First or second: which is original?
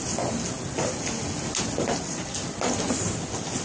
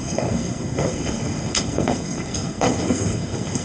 first